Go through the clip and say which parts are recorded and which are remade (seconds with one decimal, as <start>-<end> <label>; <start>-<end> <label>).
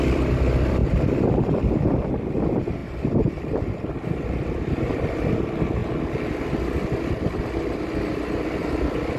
0.0-0.8 remade; 0.8-1.8 recorded; 1.8-5.8 remade; 5.8-8.6 recorded; 8.6-9.2 remade